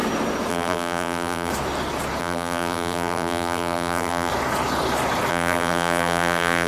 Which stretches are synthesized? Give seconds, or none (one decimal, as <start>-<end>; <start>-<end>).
0.5-1.5; 2.2-4.3; 5.3-6.7